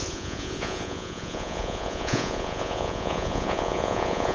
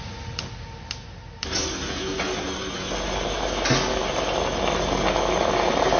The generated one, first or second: first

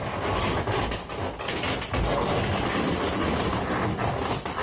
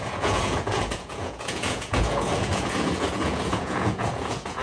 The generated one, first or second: second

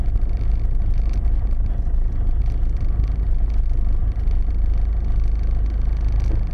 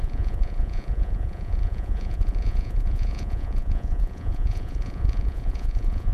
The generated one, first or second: second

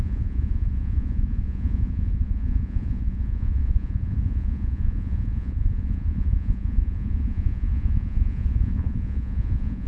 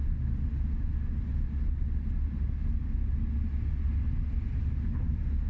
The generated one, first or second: first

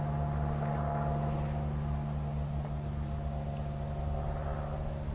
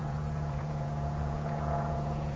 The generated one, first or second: second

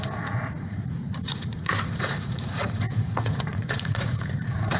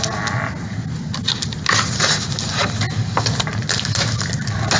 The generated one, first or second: first